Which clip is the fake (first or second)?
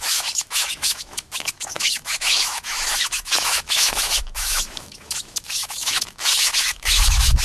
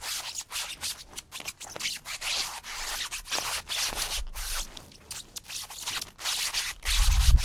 first